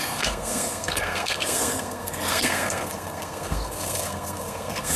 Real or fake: fake